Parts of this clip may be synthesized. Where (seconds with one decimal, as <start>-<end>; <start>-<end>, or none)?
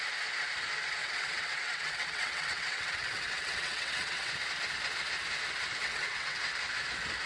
1.0-4.3; 5.8-6.4